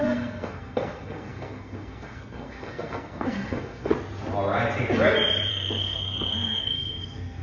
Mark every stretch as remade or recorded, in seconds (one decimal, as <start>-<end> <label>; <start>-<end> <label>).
0.0-3.9 remade; 3.9-5.5 recorded; 5.5-7.4 remade